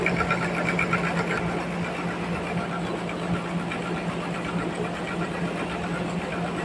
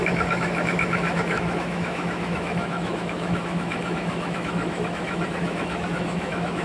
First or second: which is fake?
second